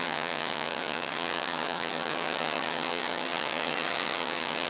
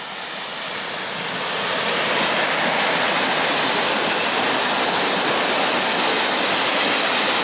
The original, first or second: second